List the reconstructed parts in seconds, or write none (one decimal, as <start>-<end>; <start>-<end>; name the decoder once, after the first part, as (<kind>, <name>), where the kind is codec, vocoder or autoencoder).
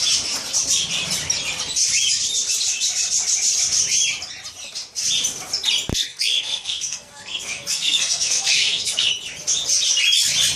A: 5.9-9.1 (codec, SNAC)